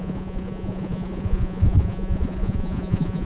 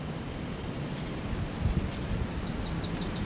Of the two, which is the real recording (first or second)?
second